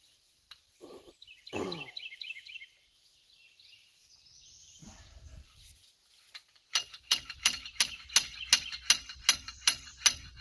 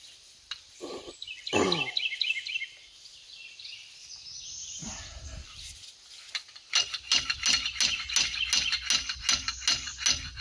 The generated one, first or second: first